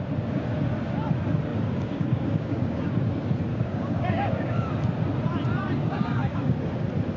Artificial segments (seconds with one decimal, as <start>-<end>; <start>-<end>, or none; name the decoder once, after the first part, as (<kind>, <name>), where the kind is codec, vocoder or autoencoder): 1.5-3.0 (codec, DAC); 3.5-4.7; 5.8-6.5